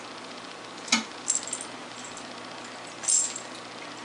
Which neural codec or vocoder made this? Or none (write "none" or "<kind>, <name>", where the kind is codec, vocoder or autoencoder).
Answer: none